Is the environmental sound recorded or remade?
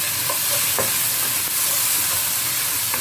recorded